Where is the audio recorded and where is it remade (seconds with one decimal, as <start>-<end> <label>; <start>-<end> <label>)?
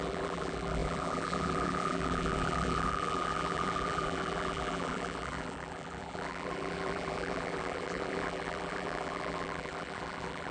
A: 0.0-10.5 remade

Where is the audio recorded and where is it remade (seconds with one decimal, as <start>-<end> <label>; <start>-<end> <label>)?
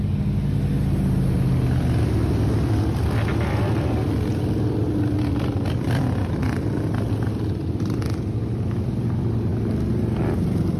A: 0.0-10.8 recorded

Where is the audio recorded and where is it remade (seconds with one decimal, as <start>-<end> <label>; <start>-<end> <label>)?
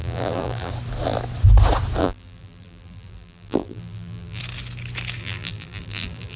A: 0.0-0.7 remade; 0.7-2.0 recorded; 2.0-4.4 remade; 4.4-5.2 recorded; 5.2-6.4 remade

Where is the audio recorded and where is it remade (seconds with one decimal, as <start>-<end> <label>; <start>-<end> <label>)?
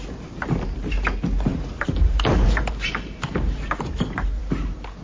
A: 0.0-1.5 recorded; 1.5-3.7 remade; 3.7-5.0 recorded